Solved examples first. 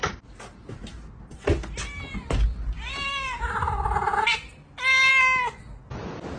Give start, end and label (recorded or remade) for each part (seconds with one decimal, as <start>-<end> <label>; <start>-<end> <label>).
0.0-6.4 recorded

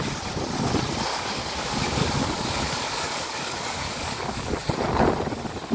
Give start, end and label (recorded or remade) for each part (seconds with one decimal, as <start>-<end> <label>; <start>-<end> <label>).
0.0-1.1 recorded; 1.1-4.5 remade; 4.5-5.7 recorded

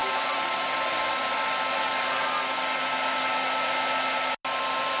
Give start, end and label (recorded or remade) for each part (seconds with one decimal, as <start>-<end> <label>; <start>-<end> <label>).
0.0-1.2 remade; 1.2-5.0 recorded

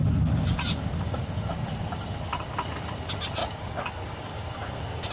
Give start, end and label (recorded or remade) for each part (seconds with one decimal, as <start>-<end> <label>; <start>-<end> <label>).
0.0-3.4 recorded; 3.4-5.1 remade

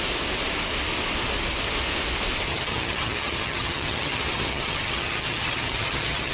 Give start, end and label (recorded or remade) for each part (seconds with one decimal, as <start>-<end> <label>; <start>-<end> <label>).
0.0-2.5 recorded; 2.5-6.3 remade